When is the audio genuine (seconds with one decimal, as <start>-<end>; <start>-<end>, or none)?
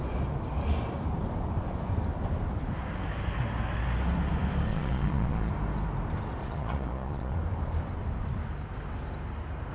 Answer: 0.0-4.7; 5.5-6.4; 7.4-9.7